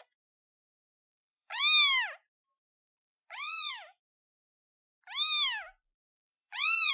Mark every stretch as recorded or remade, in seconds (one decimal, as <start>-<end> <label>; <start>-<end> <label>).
0.0-1.1 recorded; 1.1-1.6 remade; 1.6-2.8 recorded; 2.8-3.7 remade; 3.7-6.1 recorded; 6.1-6.9 remade